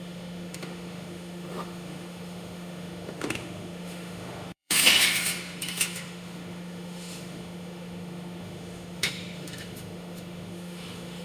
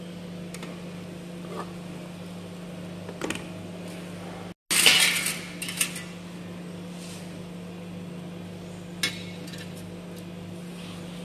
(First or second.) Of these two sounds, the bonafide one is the second